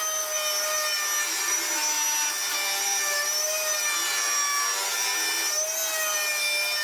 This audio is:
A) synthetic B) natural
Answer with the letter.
B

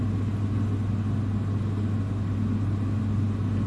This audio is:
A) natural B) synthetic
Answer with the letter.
A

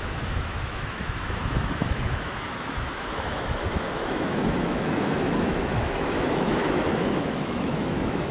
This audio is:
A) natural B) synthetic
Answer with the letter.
B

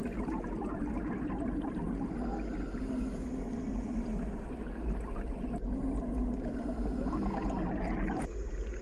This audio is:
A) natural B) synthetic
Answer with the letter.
A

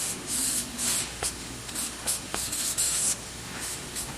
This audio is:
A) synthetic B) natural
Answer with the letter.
A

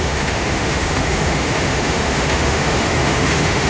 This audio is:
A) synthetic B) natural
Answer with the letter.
A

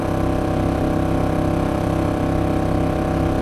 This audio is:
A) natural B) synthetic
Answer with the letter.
A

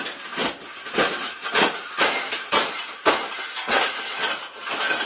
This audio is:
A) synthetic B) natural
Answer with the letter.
B